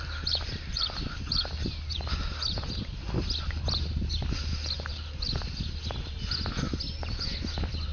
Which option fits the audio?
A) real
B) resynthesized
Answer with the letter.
A